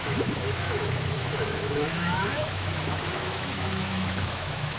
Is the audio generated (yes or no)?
yes